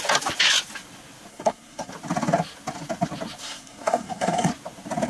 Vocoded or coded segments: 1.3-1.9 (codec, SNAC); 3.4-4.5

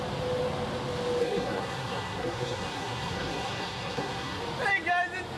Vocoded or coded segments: 1.2-4.4 (codec, SNAC)

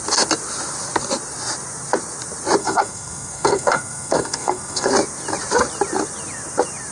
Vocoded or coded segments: 2.6-4.9 (codec, SNAC)

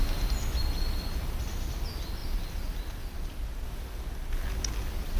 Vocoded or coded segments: none